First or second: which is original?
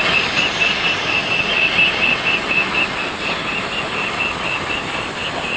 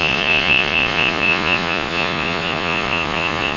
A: first